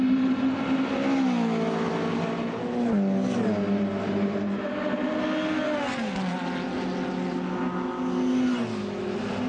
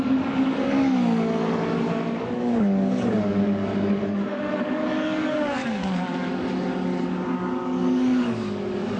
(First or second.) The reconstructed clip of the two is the second